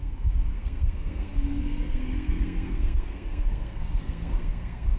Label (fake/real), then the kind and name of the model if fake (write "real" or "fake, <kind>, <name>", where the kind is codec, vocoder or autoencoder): fake, codec, SNAC